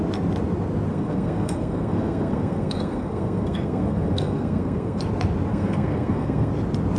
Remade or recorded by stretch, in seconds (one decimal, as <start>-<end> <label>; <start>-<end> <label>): 0.0-0.9 recorded; 0.9-5.0 remade; 5.0-5.5 recorded; 5.5-6.5 remade; 6.5-7.0 recorded